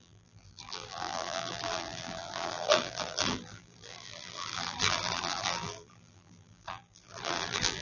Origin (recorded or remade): remade